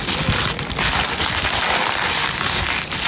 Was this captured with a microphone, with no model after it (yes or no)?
yes